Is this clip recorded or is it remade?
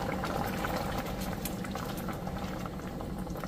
remade